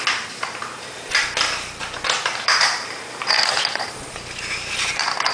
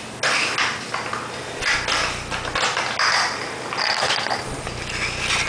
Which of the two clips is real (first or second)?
second